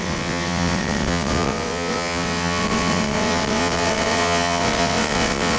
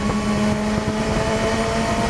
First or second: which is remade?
first